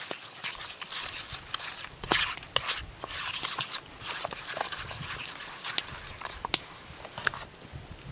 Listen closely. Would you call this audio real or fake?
real